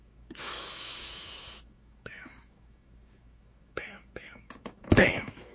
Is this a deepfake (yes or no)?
yes